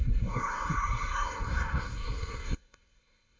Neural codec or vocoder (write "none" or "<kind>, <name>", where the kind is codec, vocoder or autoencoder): codec, SNAC